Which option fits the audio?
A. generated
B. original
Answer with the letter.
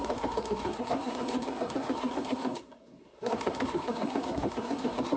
A